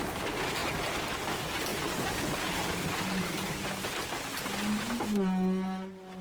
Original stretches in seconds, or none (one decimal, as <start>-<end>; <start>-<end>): 0.0-6.2